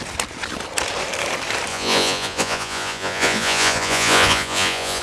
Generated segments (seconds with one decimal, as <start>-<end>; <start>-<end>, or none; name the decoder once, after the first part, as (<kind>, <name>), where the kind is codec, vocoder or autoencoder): 1.7-5.0 (vocoder, Vocos)